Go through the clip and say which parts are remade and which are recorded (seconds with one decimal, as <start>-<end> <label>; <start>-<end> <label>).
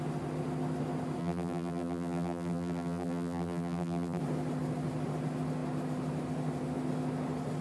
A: 0.0-1.2 recorded; 1.2-4.2 remade; 4.2-7.6 recorded